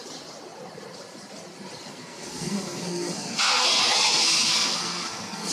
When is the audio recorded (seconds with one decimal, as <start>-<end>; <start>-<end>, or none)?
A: 0.0-1.9